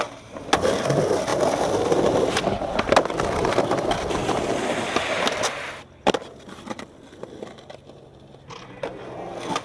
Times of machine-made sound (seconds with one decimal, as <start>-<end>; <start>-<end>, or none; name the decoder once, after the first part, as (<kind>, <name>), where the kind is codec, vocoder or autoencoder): none